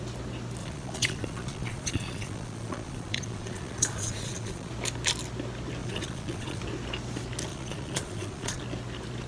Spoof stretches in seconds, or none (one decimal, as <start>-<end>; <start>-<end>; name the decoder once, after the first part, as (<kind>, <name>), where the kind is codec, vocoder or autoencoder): 0.6-4.7 (vocoder, Vocos); 5.8-6.6; 7.5-8.6

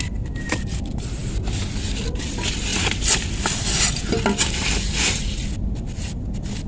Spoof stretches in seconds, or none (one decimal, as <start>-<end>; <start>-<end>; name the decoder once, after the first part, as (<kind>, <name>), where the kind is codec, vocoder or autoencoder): none

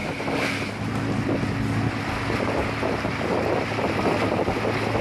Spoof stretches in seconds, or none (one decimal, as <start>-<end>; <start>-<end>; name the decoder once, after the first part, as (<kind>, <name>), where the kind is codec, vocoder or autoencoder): none

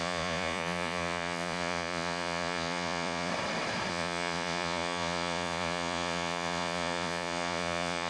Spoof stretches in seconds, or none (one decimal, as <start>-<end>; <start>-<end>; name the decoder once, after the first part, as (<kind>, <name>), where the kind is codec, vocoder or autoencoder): 0.0-3.3 (vocoder, Vocos); 3.9-8.1

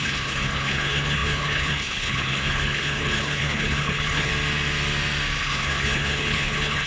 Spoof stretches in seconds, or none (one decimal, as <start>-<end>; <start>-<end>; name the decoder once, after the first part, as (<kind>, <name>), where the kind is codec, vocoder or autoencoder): 0.0-4.3 (codec, HILCodec); 5.4-6.9